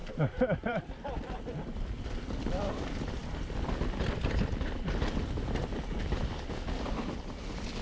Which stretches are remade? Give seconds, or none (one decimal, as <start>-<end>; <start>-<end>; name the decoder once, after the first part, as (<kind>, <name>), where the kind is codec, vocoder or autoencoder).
0.0-1.4 (vocoder, BigVGAN v2)